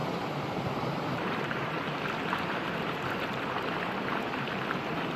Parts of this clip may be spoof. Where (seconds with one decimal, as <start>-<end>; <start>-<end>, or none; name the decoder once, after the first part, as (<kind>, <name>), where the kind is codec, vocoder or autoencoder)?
0.0-1.9 (vocoder, BigVGAN v2)